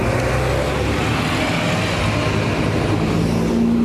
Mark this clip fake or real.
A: real